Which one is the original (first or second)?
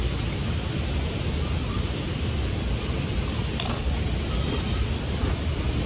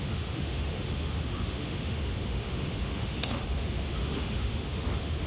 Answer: first